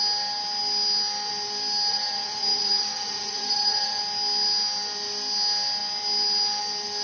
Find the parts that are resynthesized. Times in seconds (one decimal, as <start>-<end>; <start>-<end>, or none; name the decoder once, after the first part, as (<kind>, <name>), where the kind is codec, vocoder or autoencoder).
1.9-4.0 (vocoder, Vocos)